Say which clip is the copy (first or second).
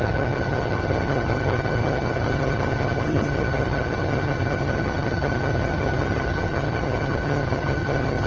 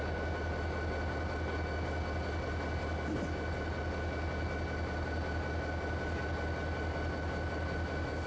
first